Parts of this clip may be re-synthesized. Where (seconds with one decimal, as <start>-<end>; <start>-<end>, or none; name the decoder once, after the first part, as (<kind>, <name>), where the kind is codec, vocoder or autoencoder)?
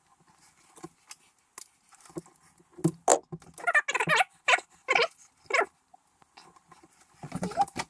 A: none